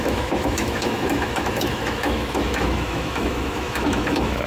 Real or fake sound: fake